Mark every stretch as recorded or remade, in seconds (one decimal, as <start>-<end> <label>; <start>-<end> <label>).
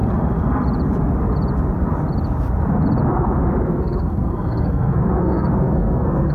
0.0-3.8 recorded; 3.8-6.3 remade